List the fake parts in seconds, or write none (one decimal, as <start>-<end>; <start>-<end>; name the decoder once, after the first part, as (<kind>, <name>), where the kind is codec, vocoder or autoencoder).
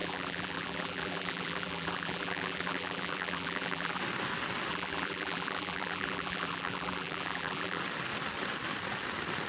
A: 0.0-4.0 (vocoder, BigVGAN v2); 4.7-7.8